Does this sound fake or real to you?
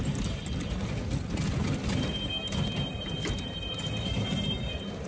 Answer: real